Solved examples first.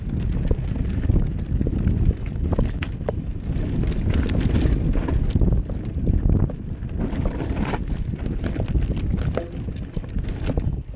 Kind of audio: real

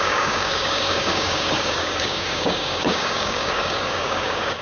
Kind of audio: fake